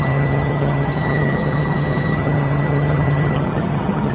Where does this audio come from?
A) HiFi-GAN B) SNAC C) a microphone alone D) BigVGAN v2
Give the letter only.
A